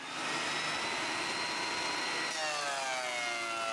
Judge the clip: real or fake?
real